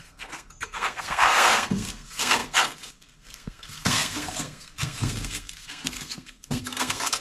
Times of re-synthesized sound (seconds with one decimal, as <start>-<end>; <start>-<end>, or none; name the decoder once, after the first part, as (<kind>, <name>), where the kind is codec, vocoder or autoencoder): 0.0-7.2 (codec, SNAC)